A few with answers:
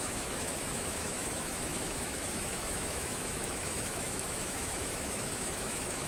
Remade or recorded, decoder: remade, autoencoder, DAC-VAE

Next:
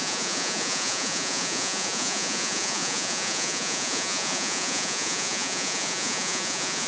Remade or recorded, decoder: remade, vocoder, Vocos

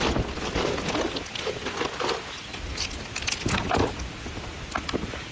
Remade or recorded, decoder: recorded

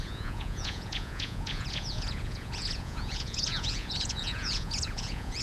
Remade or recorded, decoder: remade, vocoder, Vocos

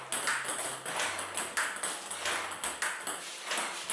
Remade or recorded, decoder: recorded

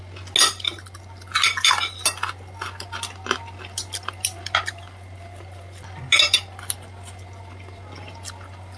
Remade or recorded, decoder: recorded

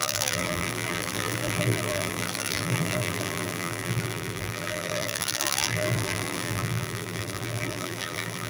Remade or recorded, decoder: remade, vocoder, BigVGAN v2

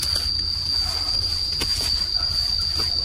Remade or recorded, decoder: recorded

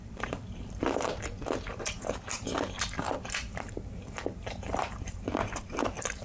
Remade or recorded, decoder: remade, vocoder, BigVGAN v2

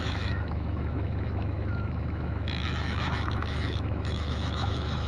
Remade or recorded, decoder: remade, autoencoder, DAC-VAE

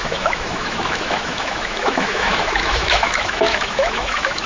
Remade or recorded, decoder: remade, autoencoder, DAC-VAE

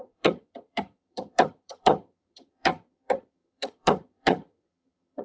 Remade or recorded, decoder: remade, vocoder, HiFi-GAN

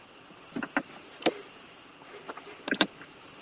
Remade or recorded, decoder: recorded